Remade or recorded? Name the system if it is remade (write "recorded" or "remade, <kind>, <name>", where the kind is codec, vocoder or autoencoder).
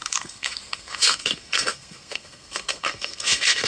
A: remade, codec, SNAC